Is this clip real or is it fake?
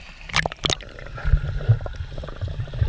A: real